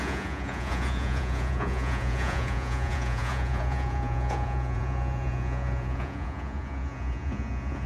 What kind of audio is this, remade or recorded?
remade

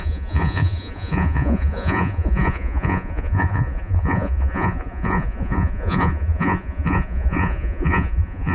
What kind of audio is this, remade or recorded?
remade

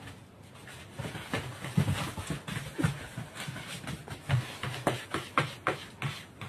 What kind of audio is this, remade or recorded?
recorded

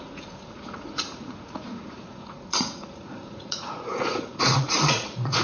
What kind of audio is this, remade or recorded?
remade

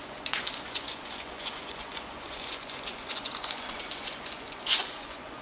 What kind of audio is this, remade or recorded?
remade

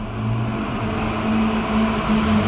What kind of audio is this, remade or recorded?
recorded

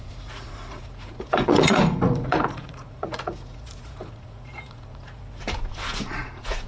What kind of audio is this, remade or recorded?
remade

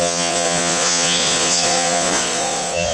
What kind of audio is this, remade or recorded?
remade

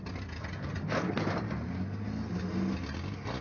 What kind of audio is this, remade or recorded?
recorded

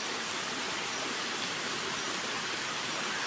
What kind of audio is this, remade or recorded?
recorded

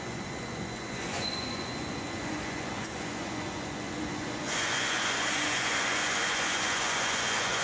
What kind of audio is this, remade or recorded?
remade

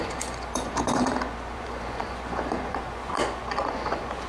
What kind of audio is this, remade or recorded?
remade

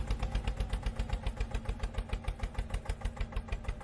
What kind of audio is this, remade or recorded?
recorded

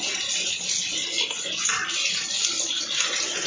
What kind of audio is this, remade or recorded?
recorded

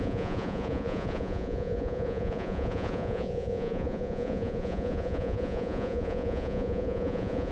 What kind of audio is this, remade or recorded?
remade